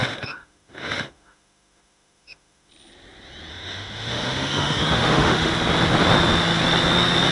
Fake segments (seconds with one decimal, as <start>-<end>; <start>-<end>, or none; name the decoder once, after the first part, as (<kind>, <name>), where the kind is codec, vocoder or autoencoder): 0.0-2.7 (autoencoder, DAC-VAE); 3.5-5.5